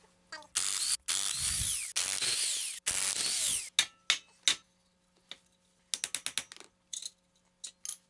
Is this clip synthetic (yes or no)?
no